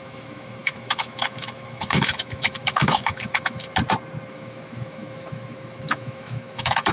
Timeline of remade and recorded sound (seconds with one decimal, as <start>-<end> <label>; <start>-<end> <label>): 0.0-3.7 remade; 3.7-4.3 recorded; 4.3-6.9 remade